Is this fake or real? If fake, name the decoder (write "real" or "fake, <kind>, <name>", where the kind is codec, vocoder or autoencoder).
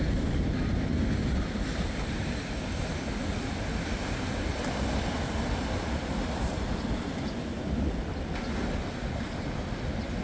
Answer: real